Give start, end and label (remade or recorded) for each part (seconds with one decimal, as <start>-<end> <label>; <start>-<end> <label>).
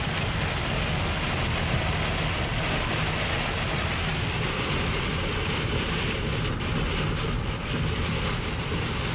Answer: 0.0-9.1 recorded